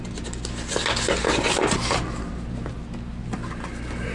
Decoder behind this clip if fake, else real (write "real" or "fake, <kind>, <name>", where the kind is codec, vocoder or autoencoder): real